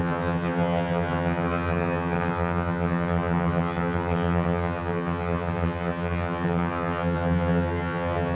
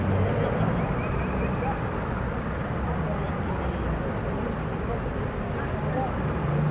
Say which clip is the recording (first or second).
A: second